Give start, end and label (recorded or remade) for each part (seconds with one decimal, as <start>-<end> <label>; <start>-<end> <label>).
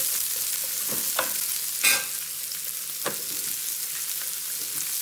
0.0-5.0 recorded